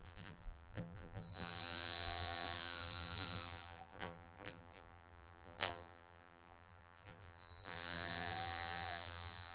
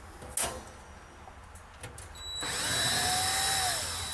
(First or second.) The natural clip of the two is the second